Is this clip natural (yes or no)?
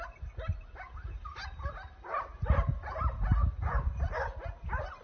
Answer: yes